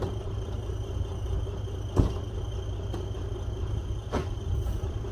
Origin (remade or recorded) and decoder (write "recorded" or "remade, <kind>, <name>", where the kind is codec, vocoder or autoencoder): recorded